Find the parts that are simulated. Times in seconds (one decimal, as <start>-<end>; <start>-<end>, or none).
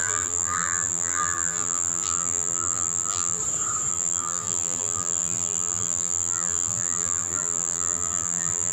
0.0-3.4; 3.9-8.7